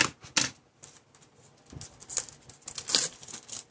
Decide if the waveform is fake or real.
real